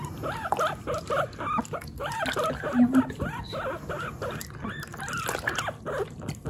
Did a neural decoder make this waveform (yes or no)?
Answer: no